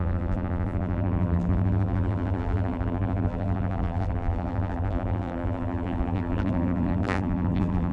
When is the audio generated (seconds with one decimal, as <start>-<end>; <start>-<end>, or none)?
0.0-7.9